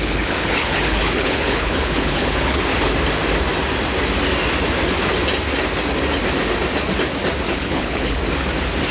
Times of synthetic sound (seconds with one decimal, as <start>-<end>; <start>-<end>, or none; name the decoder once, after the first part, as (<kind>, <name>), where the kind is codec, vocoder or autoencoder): 0.0-2.7 (codec, HILCodec); 7.5-8.2